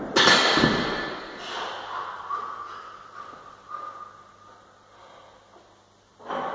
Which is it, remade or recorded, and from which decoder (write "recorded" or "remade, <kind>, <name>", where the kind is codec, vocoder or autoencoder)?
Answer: recorded